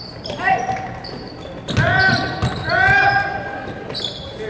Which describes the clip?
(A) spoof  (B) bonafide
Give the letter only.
B